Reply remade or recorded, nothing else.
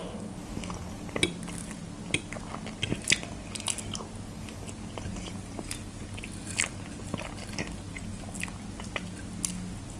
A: recorded